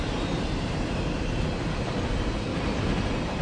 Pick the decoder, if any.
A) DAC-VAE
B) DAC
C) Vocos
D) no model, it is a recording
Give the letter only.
D